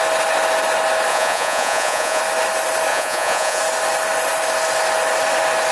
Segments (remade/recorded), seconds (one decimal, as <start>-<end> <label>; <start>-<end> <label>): 0.0-1.1 recorded; 1.1-2.2 remade; 2.2-2.9 recorded; 2.9-3.6 remade; 3.6-5.7 recorded